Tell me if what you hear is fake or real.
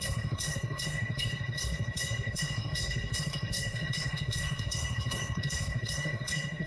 fake